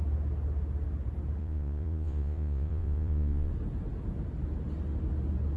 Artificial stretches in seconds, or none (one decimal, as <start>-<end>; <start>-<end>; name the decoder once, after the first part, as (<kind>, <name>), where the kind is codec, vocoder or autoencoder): 1.4-3.5 (vocoder, Vocos)

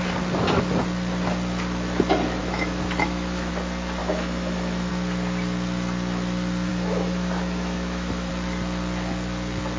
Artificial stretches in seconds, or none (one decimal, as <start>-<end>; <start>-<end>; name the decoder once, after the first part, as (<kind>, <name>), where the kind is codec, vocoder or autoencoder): 2.4-3.5 (autoencoder, DAC-VAE); 4.0-4.9; 6.7-8.3

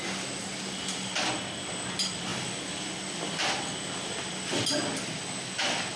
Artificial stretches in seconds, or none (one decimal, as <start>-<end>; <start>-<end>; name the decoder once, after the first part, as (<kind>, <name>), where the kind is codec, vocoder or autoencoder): none

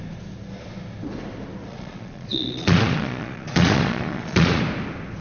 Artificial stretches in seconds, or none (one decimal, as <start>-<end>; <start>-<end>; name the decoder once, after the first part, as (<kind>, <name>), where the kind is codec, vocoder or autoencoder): 1.7-4.6 (vocoder, Vocos)

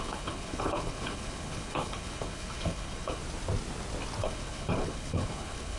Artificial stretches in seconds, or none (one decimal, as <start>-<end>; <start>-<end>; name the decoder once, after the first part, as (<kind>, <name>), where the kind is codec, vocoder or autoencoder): 0.0-3.2 (codec, HILCodec); 4.2-5.8

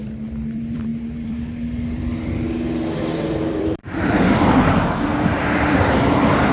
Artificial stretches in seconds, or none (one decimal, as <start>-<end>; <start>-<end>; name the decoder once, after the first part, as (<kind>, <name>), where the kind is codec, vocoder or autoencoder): 0.0-6.5 (vocoder, BigVGAN v2)

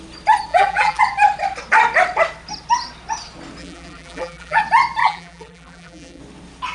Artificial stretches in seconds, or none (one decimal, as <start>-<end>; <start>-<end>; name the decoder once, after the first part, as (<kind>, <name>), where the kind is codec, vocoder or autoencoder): 0.5-1.0 (vocoder, BigVGAN v2); 3.6-4.6; 5.0-6.2